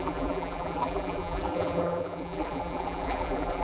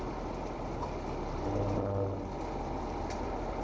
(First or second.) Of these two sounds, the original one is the second